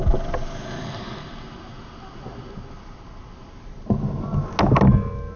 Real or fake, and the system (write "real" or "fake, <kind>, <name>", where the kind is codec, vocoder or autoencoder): real